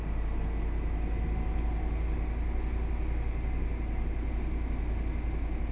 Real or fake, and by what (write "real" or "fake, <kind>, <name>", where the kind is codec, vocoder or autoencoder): real